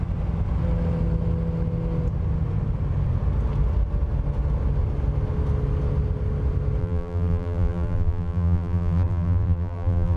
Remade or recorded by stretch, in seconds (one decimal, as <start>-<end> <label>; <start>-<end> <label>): 0.0-6.8 recorded; 6.8-10.2 remade